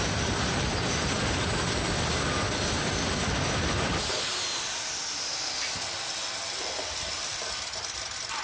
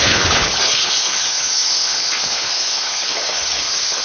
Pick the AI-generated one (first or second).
second